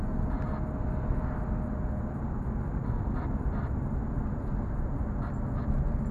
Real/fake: real